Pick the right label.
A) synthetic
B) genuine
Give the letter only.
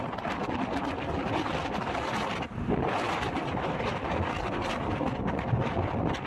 B